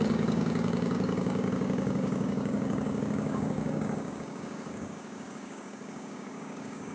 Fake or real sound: fake